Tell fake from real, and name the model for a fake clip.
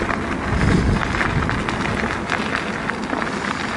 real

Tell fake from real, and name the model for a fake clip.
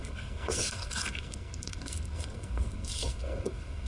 fake, codec, SNAC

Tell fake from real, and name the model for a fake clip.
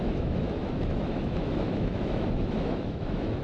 fake, autoencoder, DAC-VAE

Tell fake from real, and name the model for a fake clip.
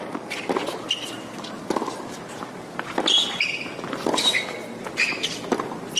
real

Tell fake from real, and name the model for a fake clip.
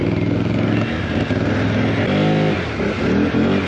real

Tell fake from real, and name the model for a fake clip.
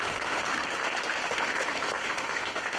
fake, autoencoder, DAC-VAE